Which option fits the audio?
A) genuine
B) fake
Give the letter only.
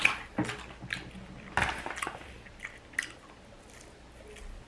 A